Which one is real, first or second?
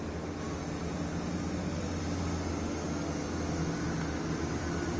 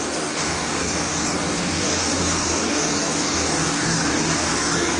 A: first